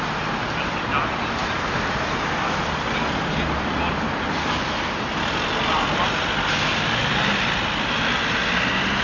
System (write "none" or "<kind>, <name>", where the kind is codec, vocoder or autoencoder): none